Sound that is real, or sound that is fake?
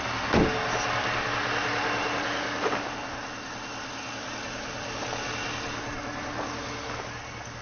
real